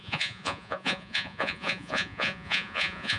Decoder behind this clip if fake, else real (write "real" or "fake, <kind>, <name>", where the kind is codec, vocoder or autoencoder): fake, vocoder, Vocos